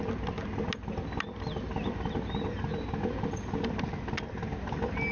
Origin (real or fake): real